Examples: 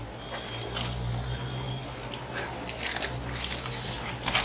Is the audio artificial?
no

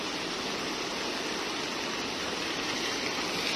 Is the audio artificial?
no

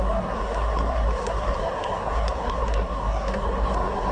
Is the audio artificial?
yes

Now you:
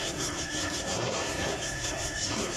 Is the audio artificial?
yes